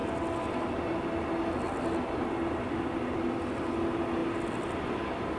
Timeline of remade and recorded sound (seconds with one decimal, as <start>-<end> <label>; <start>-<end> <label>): 0.0-5.4 recorded